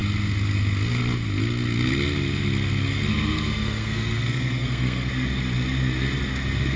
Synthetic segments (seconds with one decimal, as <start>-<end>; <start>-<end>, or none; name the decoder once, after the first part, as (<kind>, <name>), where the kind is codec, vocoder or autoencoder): 3.1-5.1 (codec, SNAC)